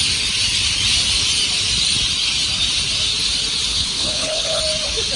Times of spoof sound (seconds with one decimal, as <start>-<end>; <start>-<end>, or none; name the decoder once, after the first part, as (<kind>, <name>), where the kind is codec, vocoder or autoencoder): 3.7-4.6 (codec, HILCodec)